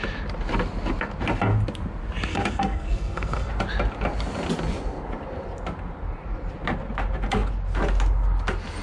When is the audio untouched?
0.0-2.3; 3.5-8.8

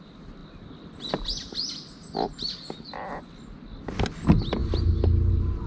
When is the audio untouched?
0.0-5.7